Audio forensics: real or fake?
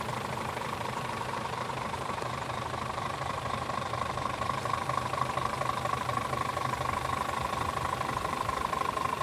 fake